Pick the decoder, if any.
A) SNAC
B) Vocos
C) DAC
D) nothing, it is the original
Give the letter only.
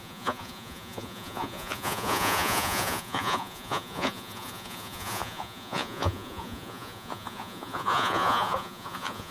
B